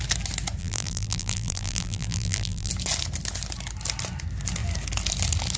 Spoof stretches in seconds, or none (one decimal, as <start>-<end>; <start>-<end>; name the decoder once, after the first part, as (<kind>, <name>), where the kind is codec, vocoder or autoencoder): 0.6-2.7 (vocoder, BigVGAN v2)